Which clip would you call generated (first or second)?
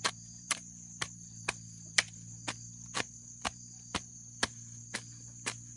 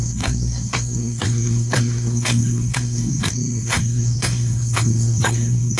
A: second